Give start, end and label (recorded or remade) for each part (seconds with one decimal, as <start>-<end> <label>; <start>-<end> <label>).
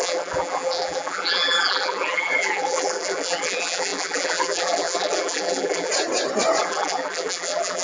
0.0-5.9 remade; 5.9-6.6 recorded; 6.6-7.8 remade